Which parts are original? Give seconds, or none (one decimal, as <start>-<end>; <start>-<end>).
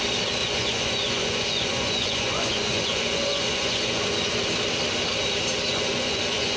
0.0-0.4; 4.4-5.7